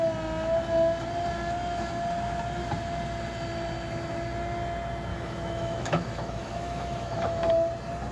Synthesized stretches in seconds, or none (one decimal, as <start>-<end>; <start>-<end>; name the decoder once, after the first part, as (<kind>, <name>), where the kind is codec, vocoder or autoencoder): 5.1-7.5 (autoencoder, DAC-VAE)